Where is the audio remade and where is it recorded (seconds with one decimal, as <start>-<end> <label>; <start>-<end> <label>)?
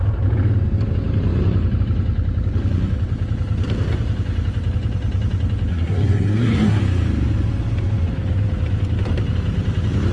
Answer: 0.0-5.7 recorded; 5.7-6.8 remade; 6.8-10.1 recorded